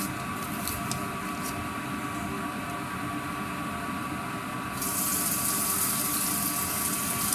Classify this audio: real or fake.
real